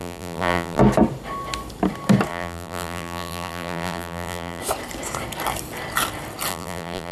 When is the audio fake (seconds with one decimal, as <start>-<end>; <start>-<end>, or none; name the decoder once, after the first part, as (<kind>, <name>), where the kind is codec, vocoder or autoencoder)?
0.0-0.8 (vocoder, BigVGAN v2); 2.3-4.6; 6.5-7.1